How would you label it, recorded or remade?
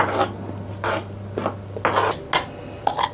recorded